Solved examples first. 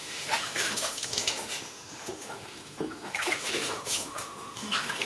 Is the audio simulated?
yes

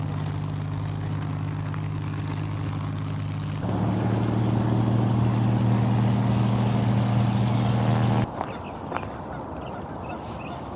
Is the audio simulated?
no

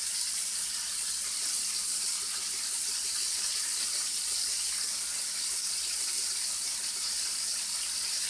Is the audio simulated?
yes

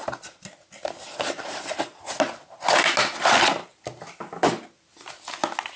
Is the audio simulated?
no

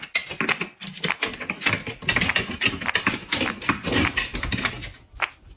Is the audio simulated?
no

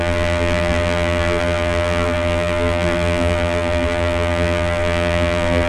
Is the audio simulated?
yes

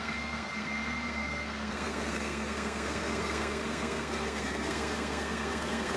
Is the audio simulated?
yes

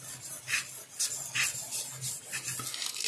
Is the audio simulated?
no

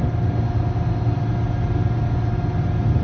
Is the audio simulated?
no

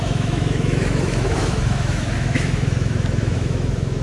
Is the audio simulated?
yes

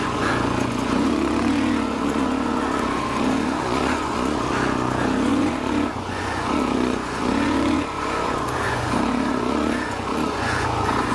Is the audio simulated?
yes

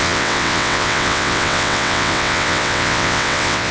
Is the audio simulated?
yes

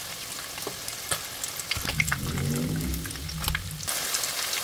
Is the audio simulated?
no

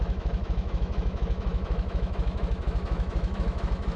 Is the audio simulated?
yes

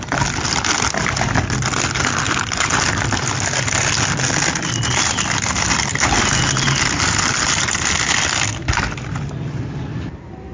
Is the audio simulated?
no